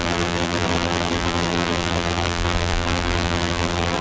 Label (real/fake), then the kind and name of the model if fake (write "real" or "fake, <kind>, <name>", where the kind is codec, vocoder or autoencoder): fake, vocoder, BigVGAN v2